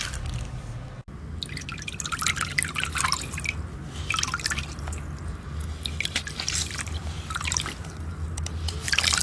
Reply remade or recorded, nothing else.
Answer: recorded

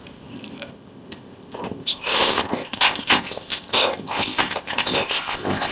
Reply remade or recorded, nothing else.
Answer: remade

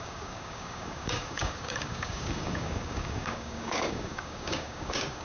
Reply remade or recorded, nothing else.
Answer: remade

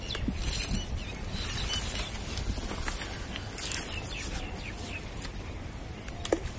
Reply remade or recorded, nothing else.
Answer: recorded